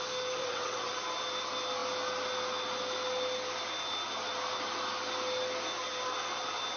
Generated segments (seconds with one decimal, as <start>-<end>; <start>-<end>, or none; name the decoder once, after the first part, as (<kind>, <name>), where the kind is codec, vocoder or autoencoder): 0.4-0.9 (vocoder, WaveNeXt)